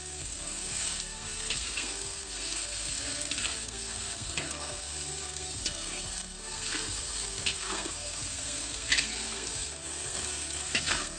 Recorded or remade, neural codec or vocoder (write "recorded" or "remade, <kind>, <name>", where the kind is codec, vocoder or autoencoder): remade, codec, SNAC